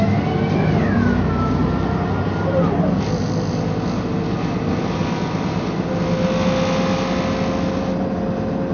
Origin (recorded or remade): recorded